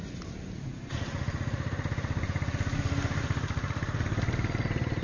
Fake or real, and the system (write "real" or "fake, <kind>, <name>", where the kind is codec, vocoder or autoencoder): real